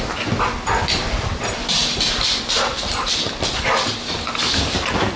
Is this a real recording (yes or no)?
no